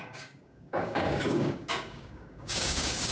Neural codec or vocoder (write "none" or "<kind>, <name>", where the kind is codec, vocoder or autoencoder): codec, DAC